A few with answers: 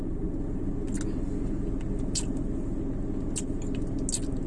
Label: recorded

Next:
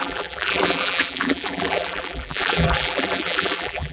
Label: remade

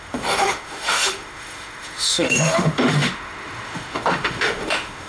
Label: remade